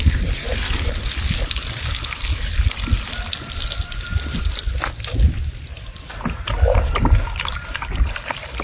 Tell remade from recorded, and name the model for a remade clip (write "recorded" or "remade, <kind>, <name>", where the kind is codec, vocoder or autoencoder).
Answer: recorded